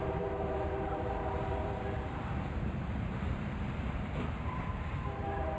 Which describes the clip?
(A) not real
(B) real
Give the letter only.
A